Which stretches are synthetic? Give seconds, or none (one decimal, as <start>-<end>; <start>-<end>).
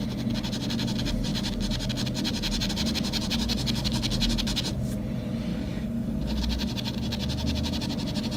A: 3.4-4.3; 5.5-6.4